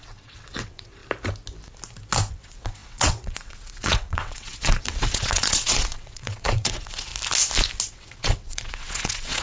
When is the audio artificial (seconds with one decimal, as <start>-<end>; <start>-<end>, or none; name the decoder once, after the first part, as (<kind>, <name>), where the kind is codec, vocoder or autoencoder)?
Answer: 0.0-1.0 (vocoder, WaveNeXt); 2.3-7.1; 7.9-9.4